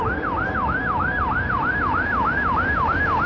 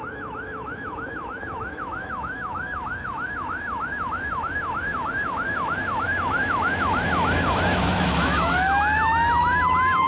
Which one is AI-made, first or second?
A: second